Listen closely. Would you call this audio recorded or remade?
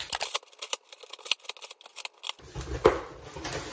recorded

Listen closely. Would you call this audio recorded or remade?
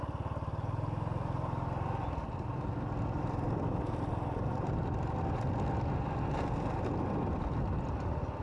recorded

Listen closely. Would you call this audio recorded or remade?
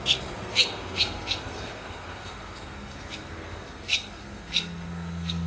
remade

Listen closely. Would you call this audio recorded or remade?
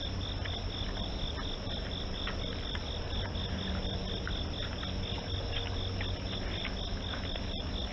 recorded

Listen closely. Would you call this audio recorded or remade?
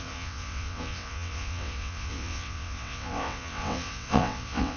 remade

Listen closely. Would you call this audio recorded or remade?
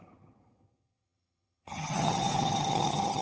remade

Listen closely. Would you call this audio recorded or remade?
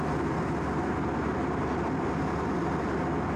recorded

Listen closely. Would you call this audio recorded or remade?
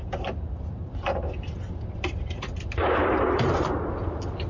remade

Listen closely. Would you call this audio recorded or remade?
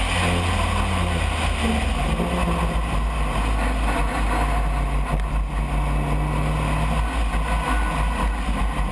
recorded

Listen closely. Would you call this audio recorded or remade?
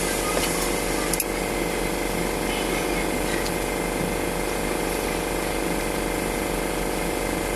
recorded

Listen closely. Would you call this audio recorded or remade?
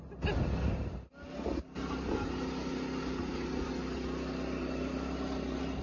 recorded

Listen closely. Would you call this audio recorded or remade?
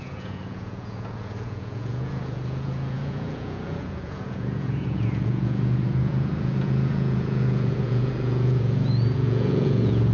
remade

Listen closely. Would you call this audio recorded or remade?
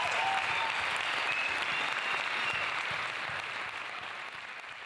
recorded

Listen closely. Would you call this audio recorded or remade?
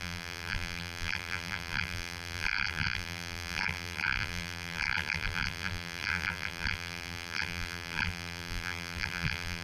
remade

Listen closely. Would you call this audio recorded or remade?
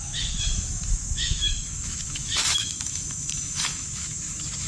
remade